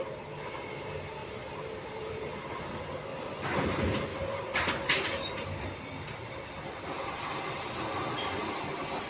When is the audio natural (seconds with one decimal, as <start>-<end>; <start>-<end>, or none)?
0.0-1.2; 2.5-3.1; 3.6-4.1; 4.7-9.1